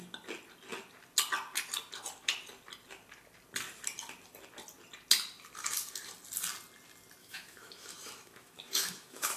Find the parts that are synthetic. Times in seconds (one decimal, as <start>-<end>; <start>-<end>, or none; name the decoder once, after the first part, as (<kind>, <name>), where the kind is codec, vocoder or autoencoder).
7.2-9.4 (autoencoder, DAC-VAE)